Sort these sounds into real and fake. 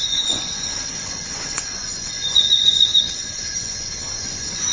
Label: fake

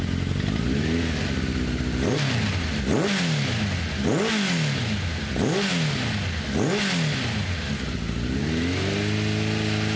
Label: real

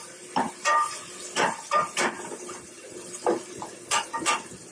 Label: fake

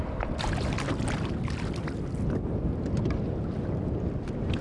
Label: real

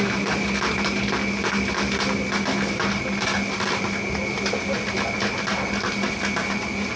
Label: real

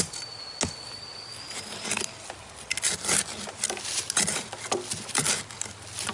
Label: real